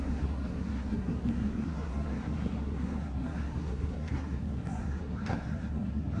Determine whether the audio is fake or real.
fake